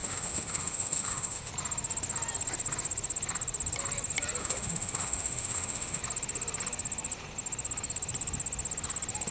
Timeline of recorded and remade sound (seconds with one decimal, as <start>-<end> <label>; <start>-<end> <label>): 0.0-1.5 remade; 1.5-4.4 recorded; 4.4-6.0 remade; 6.0-9.3 recorded